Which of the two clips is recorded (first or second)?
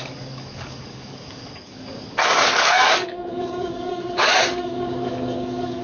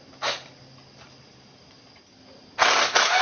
second